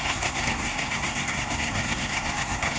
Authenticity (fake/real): fake